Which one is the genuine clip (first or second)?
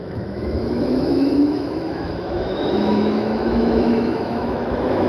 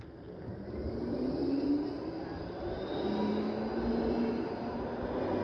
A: second